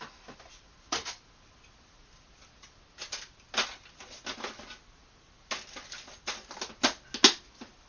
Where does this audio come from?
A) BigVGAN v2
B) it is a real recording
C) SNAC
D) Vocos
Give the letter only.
B